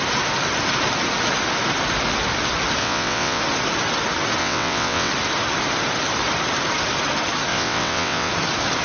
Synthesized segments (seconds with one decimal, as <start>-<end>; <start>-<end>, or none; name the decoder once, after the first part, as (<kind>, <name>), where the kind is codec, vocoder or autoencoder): 2.8-3.4 (vocoder, WaveNeXt); 4.4-5.1; 7.5-8.3